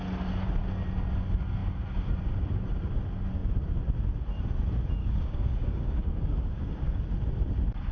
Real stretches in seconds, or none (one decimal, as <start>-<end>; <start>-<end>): 0.0-5.0; 7.0-7.9